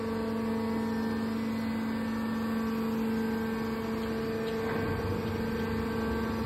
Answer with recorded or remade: recorded